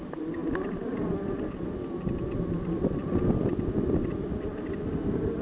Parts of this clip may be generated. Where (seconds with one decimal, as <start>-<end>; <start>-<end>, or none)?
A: none